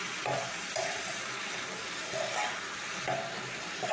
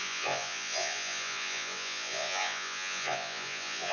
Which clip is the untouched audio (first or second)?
first